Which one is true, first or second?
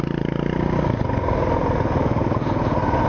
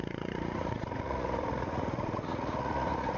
first